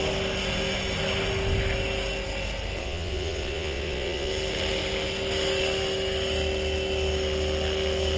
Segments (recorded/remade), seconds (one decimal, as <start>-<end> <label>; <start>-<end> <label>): 0.0-2.8 recorded; 2.8-4.3 remade; 4.3-8.2 recorded